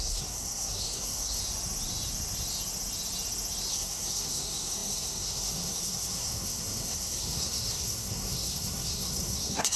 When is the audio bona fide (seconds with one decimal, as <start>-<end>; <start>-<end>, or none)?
1.4-3.7